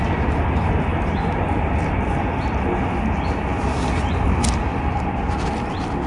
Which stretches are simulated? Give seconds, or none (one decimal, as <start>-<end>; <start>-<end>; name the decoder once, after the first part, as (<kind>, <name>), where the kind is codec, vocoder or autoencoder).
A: 0.9-1.6 (vocoder, BigVGAN v2)